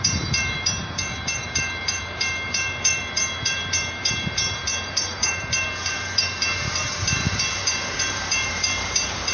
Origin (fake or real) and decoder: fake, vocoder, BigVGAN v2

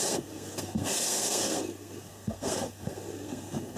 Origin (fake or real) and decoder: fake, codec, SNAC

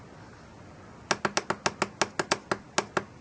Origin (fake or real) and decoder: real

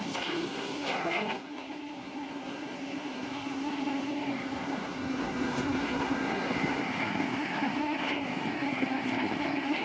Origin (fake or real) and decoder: fake, codec, SNAC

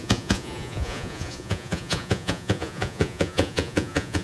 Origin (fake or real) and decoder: fake, vocoder, Vocos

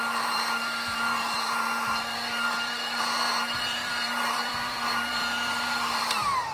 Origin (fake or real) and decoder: fake, vocoder, BigVGAN v2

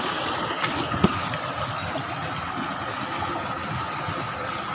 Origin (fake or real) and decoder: real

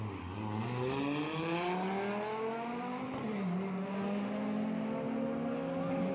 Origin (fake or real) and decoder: real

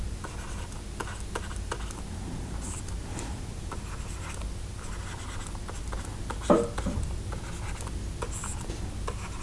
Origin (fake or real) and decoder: real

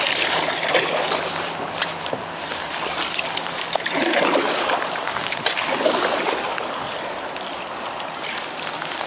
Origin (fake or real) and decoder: real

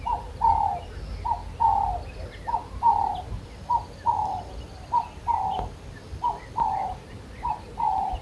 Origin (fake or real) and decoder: real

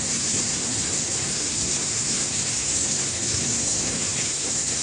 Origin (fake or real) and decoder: fake, codec, SNAC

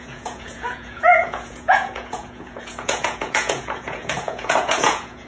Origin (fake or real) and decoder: fake, vocoder, Vocos